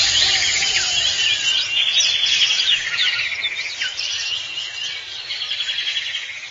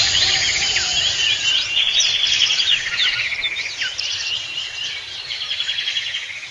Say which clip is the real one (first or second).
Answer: first